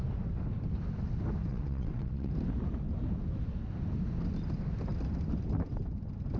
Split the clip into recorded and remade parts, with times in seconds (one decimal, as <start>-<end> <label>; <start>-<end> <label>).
0.0-1.5 recorded; 1.5-2.3 remade; 2.3-6.4 recorded